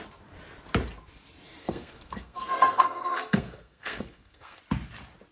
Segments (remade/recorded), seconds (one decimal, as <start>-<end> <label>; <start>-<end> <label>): 0.0-1.6 recorded; 1.6-4.6 remade; 4.6-5.3 recorded